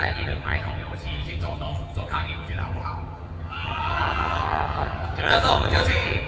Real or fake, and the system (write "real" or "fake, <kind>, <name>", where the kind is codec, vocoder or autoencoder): fake, vocoder, HiFi-GAN